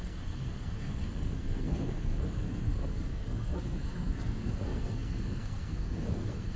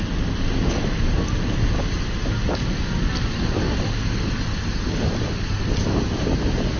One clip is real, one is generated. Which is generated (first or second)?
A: first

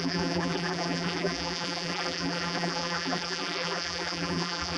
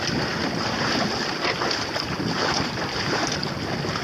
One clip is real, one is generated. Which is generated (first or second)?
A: first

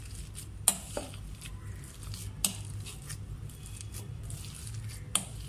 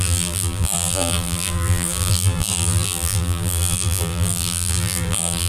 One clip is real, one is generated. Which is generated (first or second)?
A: second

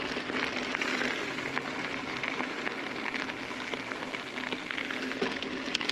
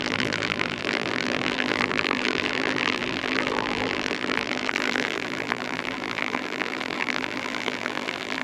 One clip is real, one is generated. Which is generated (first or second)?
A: second